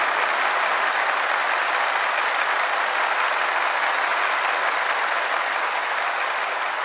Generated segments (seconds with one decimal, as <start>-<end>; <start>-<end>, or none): none